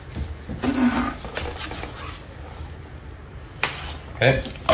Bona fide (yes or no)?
yes